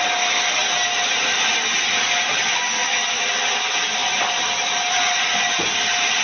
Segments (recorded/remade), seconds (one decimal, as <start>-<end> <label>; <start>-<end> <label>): 0.0-6.2 recorded